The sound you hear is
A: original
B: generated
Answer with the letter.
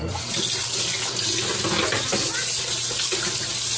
A